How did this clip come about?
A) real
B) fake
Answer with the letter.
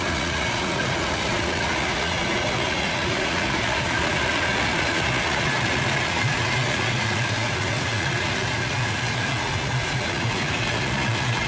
B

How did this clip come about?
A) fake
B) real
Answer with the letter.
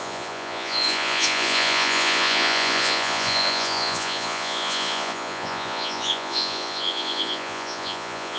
A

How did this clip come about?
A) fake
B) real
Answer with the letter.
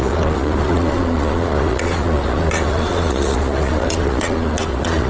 A